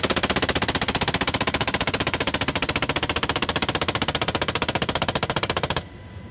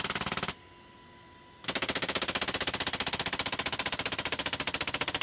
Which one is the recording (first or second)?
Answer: second